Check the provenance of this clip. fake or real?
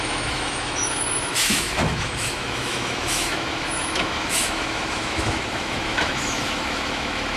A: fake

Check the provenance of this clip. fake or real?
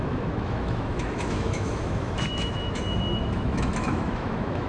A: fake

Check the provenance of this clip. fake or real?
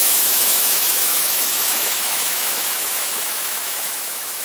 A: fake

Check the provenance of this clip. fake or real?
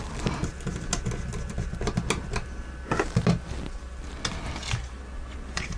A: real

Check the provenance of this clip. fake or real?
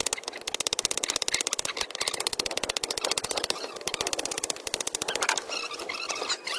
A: real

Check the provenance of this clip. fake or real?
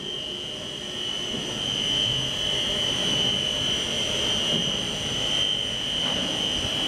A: real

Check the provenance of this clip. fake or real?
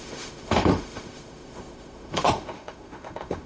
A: fake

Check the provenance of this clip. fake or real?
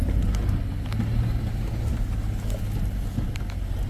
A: real